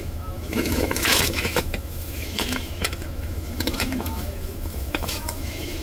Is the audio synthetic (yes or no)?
yes